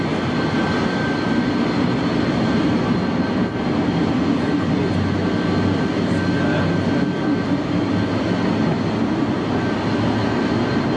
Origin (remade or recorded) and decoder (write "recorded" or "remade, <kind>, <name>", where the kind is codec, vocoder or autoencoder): recorded